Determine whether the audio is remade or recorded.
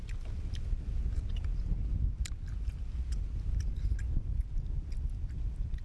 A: recorded